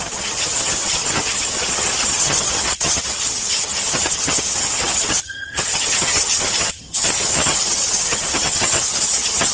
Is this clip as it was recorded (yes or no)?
no